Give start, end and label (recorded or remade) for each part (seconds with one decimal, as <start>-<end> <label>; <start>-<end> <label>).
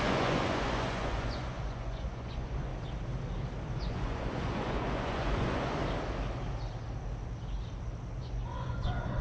0.0-2.7 remade; 2.7-3.8 recorded; 3.8-5.8 remade; 5.8-8.2 recorded; 8.2-9.2 remade